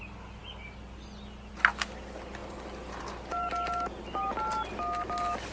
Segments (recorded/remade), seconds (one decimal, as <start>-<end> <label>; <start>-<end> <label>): 0.0-2.4 recorded; 2.4-3.0 remade; 3.0-5.5 recorded